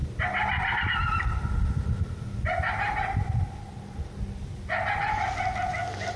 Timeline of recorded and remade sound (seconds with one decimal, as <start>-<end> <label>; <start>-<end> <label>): 0.0-6.2 recorded

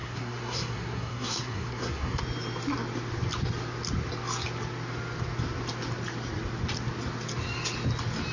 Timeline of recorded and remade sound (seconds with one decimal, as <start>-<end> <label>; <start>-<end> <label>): 0.0-2.2 remade; 2.2-8.3 recorded